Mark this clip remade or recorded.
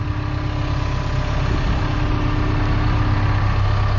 recorded